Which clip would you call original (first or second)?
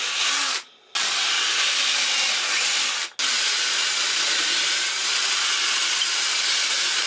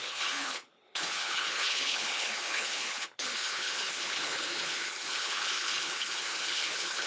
first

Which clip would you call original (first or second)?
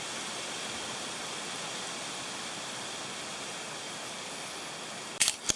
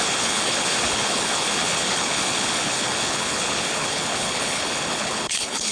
first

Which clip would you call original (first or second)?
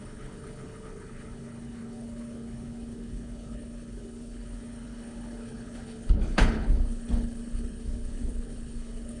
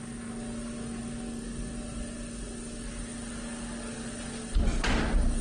second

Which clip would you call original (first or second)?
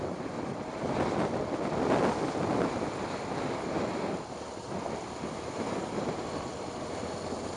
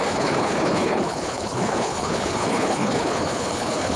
first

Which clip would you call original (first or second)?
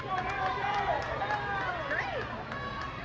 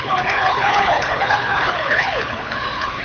first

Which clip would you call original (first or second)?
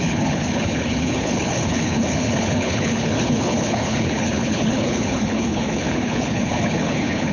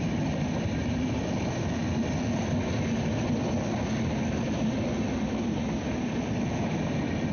second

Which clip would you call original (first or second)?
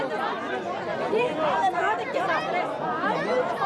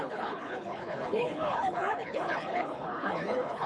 first